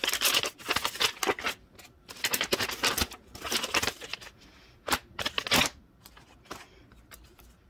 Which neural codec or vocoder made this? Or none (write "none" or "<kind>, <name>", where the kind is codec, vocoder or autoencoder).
none